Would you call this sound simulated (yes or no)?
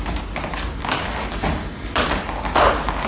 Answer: no